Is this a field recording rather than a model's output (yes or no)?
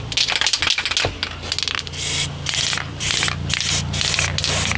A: yes